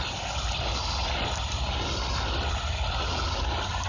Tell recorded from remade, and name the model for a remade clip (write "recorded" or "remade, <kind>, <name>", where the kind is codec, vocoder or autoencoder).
recorded